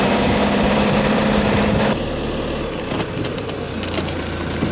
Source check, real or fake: fake